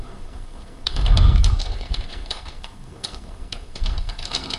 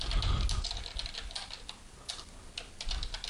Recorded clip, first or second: second